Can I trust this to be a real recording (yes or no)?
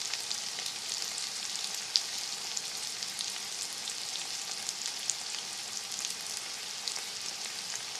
yes